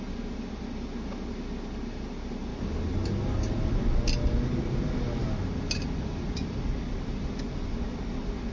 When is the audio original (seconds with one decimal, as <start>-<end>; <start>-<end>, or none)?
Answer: 0.0-8.5